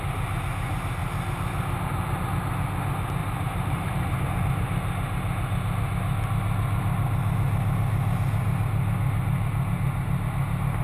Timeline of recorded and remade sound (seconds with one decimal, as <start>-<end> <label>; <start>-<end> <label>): 0.0-3.2 recorded; 3.2-4.2 remade; 4.2-10.8 recorded